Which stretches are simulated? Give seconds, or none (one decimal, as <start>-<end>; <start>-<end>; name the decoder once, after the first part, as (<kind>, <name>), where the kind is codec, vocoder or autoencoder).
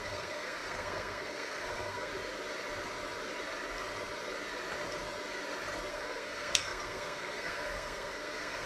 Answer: 0.0-2.1 (codec, SNAC); 5.9-8.7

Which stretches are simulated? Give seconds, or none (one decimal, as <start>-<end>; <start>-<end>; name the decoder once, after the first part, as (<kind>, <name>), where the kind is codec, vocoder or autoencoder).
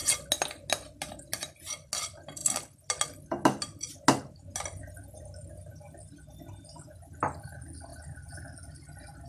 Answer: none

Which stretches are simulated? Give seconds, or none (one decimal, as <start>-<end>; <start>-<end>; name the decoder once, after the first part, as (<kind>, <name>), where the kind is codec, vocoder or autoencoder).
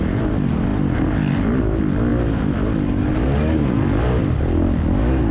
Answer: none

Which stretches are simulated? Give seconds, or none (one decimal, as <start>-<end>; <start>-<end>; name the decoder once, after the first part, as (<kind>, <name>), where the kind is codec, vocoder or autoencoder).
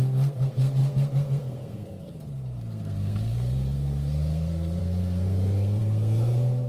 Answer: 0.0-6.7 (codec, SNAC)